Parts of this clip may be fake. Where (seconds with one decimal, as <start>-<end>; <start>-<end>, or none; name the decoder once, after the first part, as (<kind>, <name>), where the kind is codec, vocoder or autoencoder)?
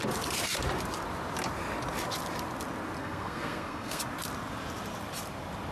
3.0-4.0 (codec, SNAC)